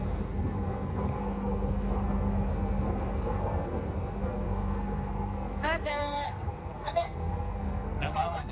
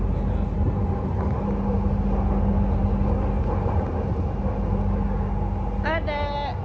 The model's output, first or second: first